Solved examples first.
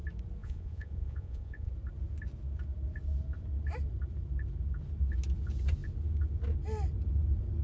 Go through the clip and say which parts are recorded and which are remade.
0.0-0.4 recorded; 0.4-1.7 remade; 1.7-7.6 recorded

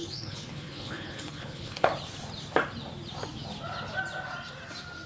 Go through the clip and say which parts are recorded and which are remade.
0.0-1.9 remade; 1.9-5.1 recorded

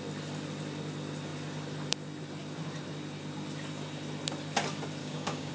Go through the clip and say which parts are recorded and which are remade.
0.0-5.0 recorded; 5.0-5.5 remade

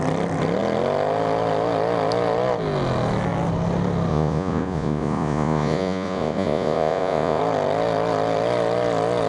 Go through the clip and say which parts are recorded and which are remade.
0.0-4.1 recorded; 4.1-7.4 remade; 7.4-9.3 recorded

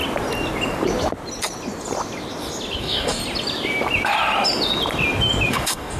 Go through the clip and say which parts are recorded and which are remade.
0.0-2.8 recorded; 2.8-3.2 remade; 3.2-5.5 recorded; 5.5-6.0 remade

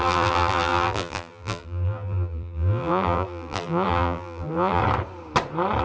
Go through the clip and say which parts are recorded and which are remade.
0.0-4.8 remade; 4.8-5.8 recorded

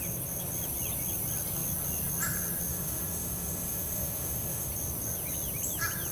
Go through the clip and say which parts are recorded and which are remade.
0.0-2.7 recorded; 2.7-4.7 remade; 4.7-6.1 recorded

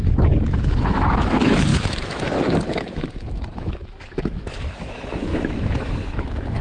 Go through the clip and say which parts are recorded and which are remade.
0.0-6.6 remade